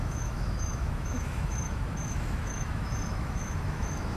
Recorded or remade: remade